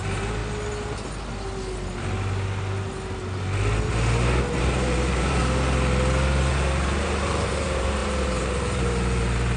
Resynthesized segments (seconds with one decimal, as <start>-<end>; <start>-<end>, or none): 0.0-0.4; 4.6-5.4; 6.5-9.6